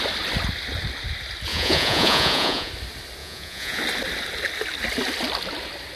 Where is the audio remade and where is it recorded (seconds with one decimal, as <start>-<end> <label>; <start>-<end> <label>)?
0.0-1.5 recorded; 1.5-2.7 remade; 2.7-3.2 recorded; 3.2-3.8 remade; 3.8-6.0 recorded